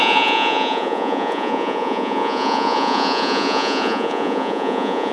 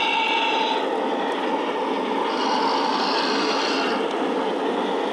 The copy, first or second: first